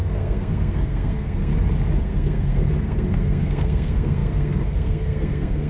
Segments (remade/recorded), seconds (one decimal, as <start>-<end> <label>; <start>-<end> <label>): 0.0-1.5 remade; 1.5-2.0 recorded; 2.0-5.7 remade